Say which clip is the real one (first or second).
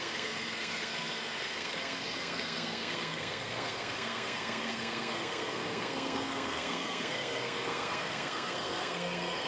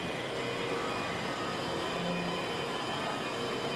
second